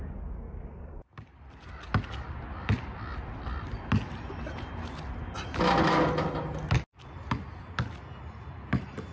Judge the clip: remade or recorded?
recorded